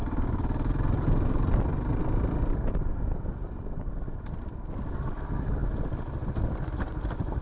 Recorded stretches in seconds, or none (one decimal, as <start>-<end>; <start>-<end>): 0.0-7.4